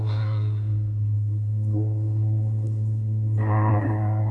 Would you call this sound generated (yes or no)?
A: yes